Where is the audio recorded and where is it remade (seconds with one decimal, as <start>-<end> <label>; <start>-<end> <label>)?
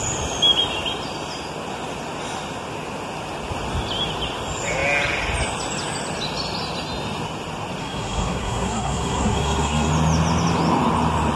0.0-7.8 recorded; 7.8-9.9 remade; 9.9-11.4 recorded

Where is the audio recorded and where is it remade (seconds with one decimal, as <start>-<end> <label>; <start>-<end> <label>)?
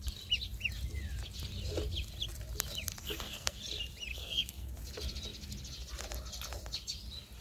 0.0-3.0 recorded; 3.0-3.6 remade; 3.6-4.1 recorded; 4.1-4.7 remade; 4.7-7.4 recorded